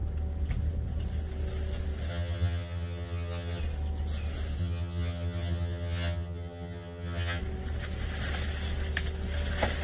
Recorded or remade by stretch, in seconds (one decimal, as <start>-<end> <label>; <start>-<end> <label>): 0.0-2.1 recorded; 2.1-3.6 remade; 3.6-4.6 recorded; 4.6-7.4 remade; 7.4-9.8 recorded